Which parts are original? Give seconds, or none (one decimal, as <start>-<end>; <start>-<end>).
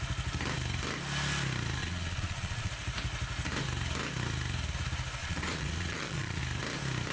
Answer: 0.0-1.8; 2.7-5.2; 6.4-7.1